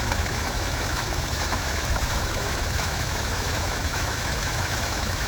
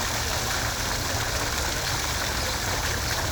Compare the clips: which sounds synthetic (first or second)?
first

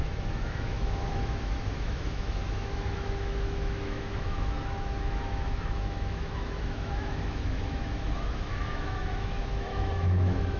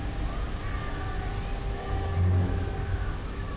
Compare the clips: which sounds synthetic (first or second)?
first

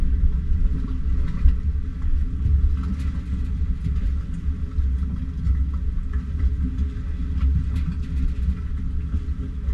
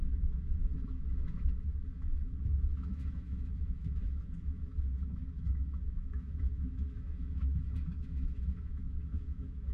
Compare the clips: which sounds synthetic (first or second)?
second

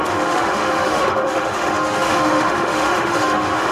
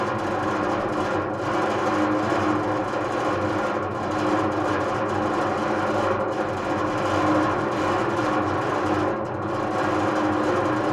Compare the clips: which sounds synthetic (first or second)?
first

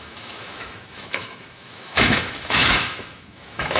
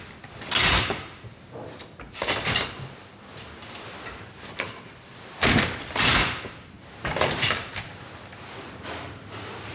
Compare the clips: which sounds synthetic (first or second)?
first